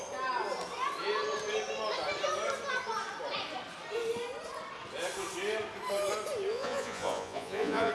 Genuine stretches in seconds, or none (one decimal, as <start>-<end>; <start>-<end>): 0.0-6.5